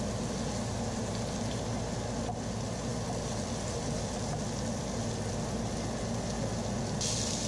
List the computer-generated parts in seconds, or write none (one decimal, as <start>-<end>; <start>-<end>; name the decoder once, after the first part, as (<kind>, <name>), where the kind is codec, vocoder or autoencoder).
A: none

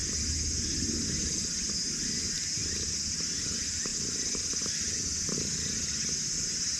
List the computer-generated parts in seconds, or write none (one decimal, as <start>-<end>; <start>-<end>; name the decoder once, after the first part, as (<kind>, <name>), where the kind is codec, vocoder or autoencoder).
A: none

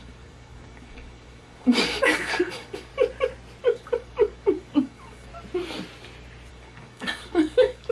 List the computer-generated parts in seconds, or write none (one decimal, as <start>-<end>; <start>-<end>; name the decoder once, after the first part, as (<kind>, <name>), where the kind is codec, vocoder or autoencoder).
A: 0.0-2.9 (codec, DAC); 3.6-5.3; 6.5-7.9